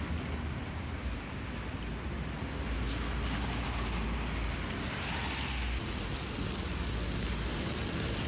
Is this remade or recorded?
recorded